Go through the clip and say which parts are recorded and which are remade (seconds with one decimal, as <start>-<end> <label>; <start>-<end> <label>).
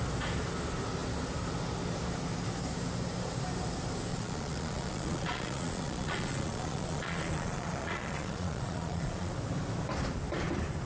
0.0-4.1 recorded; 4.1-9.3 remade; 9.3-10.9 recorded